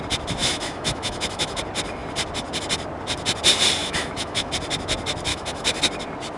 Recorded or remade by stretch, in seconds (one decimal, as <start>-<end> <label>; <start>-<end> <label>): 0.0-0.4 recorded; 0.4-1.6 remade; 1.6-3.8 recorded; 3.8-4.5 remade; 4.5-5.3 recorded; 5.3-5.8 remade; 5.8-6.4 recorded